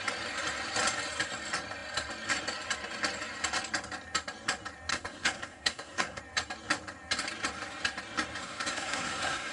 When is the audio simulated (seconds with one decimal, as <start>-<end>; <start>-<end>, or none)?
4.9-6.2; 8.4-9.5